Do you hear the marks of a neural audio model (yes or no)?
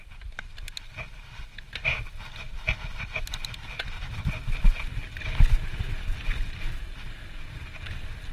no